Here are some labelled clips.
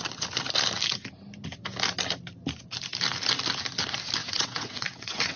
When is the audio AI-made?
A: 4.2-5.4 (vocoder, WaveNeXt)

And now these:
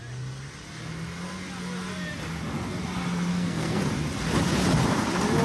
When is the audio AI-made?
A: 3.3-3.8 (codec, SNAC)

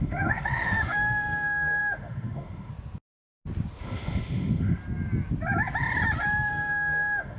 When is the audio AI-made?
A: 0.0-2.7 (autoencoder, DAC-VAE); 3.8-4.8; 6.5-7.4

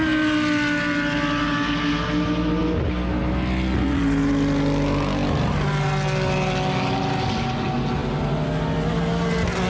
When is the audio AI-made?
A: none

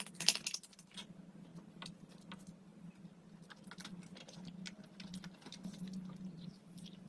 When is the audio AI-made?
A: none